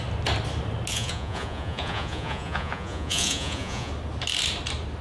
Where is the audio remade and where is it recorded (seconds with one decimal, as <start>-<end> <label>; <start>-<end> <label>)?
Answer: 0.0-0.9 recorded; 0.9-3.9 remade; 3.9-5.0 recorded